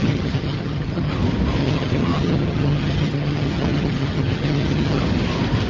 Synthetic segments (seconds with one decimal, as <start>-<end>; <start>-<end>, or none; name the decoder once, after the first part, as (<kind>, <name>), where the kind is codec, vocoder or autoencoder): 0.0-1.1 (vocoder, HiFi-GAN); 1.6-5.0